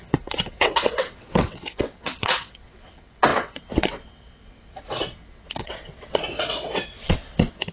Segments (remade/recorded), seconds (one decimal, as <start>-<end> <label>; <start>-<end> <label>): 0.0-7.7 remade